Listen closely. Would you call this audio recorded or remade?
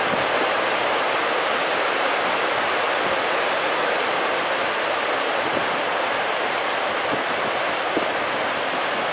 recorded